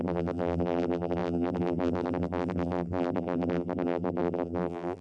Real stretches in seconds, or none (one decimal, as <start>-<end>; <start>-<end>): none